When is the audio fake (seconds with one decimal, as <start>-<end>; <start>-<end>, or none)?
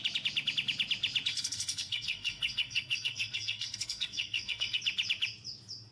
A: 1.3-4.8